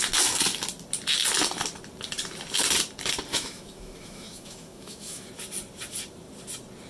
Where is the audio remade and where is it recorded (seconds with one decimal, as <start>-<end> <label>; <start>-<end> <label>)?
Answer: 0.0-3.3 recorded; 3.3-5.3 remade; 5.3-6.9 recorded